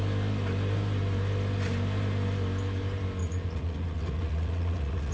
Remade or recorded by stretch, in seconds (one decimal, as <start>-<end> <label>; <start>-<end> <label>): 0.0-3.2 recorded; 3.2-5.1 remade

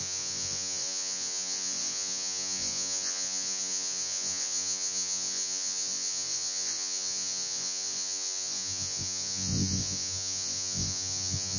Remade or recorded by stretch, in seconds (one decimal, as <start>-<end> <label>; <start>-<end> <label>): 0.0-11.6 remade